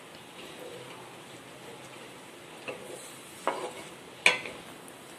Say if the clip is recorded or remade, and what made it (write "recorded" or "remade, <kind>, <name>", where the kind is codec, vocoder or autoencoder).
recorded